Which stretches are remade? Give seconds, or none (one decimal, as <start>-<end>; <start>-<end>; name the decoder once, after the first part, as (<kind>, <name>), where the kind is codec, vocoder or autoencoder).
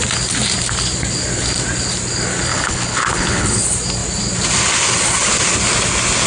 2.5-3.6 (codec, HILCodec)